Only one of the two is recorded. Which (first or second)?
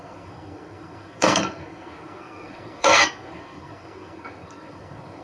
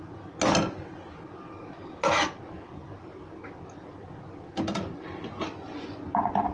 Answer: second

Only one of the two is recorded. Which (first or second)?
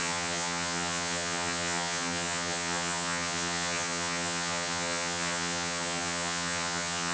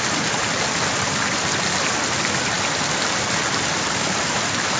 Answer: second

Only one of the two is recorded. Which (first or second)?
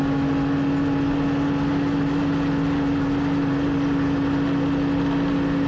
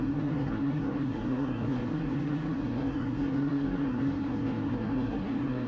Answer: first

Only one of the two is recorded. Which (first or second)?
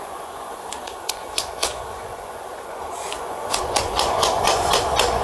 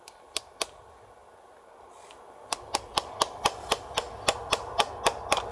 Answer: second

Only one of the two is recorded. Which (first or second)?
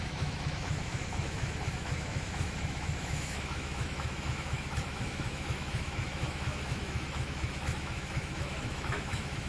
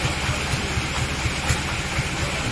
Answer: second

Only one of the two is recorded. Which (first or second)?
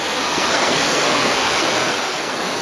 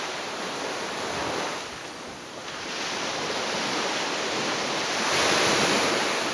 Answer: second